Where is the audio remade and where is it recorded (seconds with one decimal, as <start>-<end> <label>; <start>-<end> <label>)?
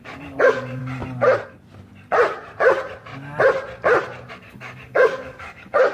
0.0-0.8 remade; 0.8-4.3 recorded; 4.3-5.9 remade